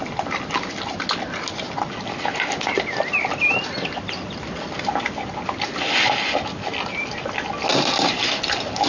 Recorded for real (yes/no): yes